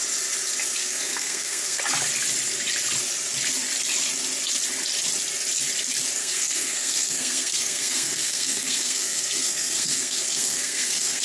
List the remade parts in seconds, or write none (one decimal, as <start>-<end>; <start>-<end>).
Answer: 0.8-1.8; 6.2-11.2